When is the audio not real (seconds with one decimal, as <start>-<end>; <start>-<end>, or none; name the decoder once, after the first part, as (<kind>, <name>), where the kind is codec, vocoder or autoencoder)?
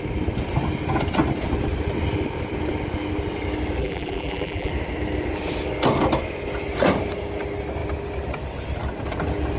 3.8-4.7 (vocoder, BigVGAN v2)